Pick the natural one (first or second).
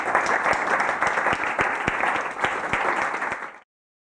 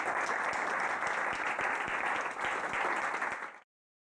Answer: second